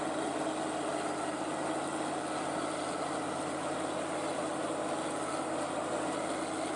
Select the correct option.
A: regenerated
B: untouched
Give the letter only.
B